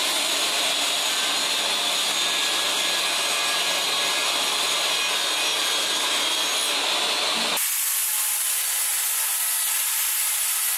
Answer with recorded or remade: recorded